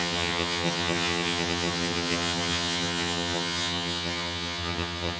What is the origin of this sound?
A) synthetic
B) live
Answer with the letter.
A